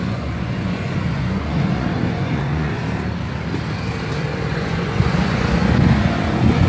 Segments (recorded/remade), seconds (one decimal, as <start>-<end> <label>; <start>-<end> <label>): 0.0-2.8 remade; 2.8-4.5 recorded; 4.5-6.7 remade